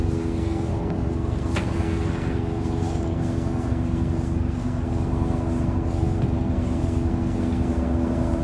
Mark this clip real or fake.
fake